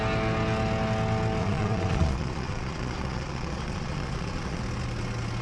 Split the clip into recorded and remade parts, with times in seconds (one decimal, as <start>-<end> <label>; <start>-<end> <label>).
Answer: 0.0-1.4 recorded; 1.4-4.6 remade; 4.6-5.4 recorded